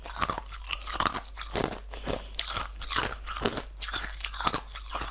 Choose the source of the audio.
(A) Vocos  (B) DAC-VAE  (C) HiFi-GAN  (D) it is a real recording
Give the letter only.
D